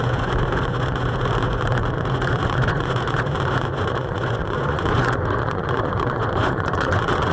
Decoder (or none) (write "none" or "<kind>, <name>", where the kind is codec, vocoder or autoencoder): vocoder, Vocos